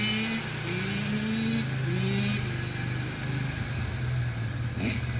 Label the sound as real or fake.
real